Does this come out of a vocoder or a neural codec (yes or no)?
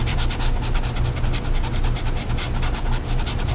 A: no